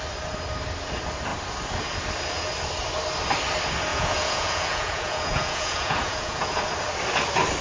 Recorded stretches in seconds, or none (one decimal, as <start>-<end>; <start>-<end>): 0.0-3.9; 6.6-7.6